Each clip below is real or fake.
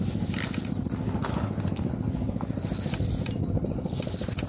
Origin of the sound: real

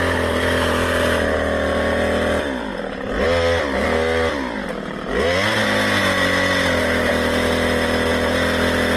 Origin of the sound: real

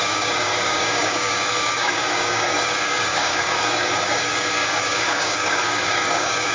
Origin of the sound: fake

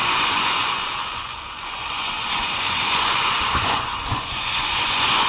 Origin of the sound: fake